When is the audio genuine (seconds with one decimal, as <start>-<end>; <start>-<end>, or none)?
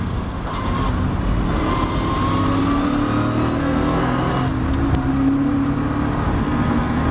0.5-3.6; 4.3-6.4